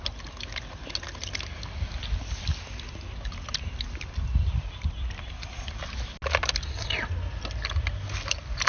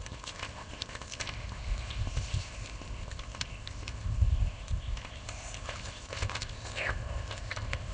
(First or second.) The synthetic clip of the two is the second